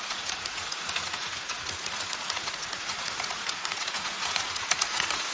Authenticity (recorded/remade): remade